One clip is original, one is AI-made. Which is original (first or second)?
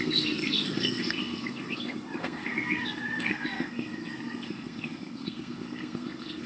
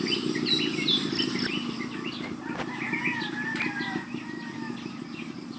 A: second